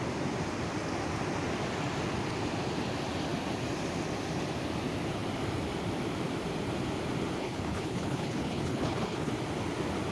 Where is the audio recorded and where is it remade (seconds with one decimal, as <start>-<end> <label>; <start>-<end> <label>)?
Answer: 0.0-7.4 recorded; 7.4-9.3 remade; 9.3-10.1 recorded